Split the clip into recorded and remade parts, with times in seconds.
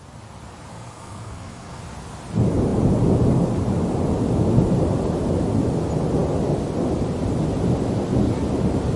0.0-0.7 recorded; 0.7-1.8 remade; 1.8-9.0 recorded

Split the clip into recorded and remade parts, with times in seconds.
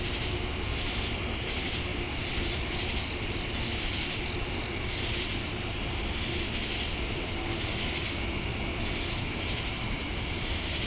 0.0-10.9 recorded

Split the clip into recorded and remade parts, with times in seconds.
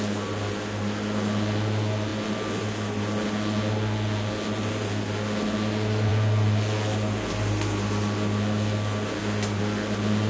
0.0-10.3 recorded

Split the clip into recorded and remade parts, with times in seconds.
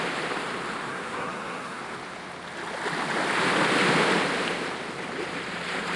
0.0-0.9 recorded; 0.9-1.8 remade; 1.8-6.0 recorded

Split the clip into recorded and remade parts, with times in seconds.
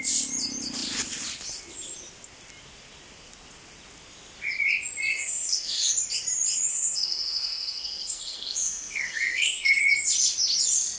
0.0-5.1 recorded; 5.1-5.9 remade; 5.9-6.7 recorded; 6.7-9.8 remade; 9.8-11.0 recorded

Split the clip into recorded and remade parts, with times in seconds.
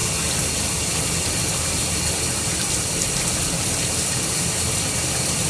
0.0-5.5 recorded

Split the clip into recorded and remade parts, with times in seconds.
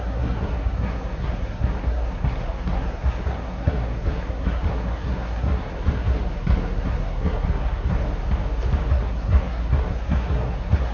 0.0-8.0 remade; 8.0-8.9 recorded; 8.9-10.9 remade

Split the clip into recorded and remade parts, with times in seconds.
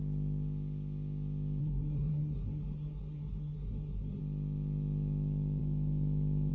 0.0-1.6 recorded; 1.6-4.2 remade; 4.2-6.5 recorded